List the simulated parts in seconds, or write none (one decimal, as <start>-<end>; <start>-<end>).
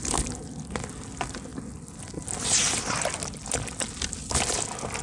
none